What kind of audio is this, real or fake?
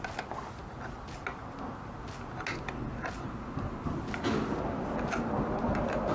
real